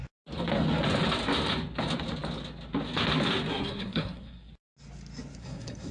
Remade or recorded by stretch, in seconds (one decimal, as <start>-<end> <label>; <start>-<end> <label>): 0.0-3.5 recorded; 3.5-4.5 remade; 4.5-5.4 recorded; 5.4-5.9 remade